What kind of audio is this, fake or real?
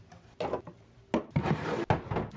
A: real